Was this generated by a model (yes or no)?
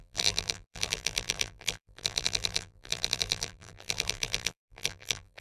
yes